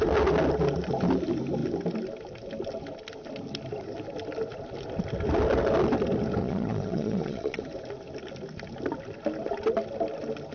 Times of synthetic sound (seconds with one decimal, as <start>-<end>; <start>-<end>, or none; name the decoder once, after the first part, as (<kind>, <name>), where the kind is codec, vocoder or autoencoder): 6.4-7.6 (vocoder, Vocos)